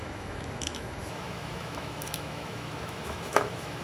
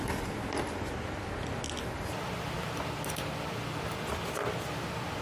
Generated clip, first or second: first